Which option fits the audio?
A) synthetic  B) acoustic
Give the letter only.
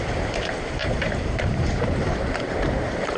A